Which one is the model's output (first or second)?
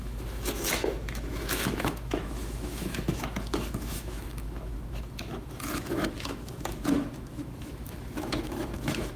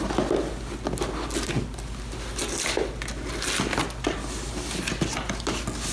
first